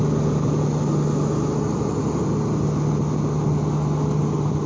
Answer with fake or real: real